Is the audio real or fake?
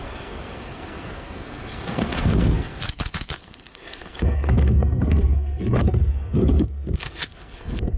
fake